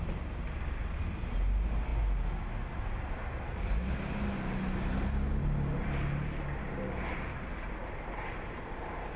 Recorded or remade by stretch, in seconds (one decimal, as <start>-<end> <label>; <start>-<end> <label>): 0.0-9.2 recorded